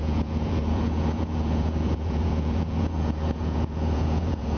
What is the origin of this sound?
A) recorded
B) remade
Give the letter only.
B